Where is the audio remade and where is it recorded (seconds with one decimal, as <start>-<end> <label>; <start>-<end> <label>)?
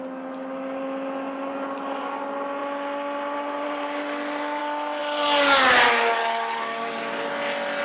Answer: 0.0-7.8 recorded